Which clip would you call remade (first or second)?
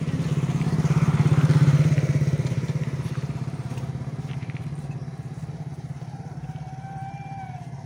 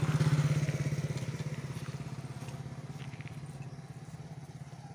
first